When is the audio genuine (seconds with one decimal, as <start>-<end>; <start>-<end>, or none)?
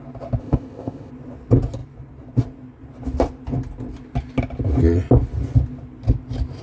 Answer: 0.0-0.4; 1.1-6.6